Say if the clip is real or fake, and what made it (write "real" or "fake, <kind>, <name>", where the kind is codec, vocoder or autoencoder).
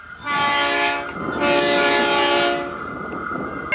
real